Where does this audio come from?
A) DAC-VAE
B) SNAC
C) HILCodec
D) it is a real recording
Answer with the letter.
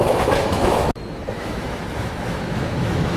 A